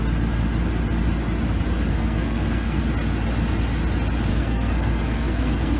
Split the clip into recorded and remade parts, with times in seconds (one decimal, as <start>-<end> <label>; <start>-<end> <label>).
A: 0.0-1.9 recorded; 1.9-2.8 remade; 2.8-4.3 recorded; 4.3-5.8 remade